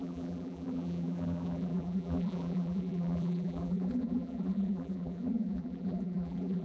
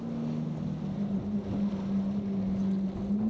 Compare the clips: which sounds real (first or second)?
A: second